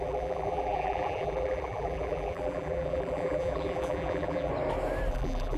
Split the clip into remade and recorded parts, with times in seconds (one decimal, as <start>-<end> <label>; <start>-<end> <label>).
0.0-4.5 remade; 4.5-5.1 recorded; 5.1-5.6 remade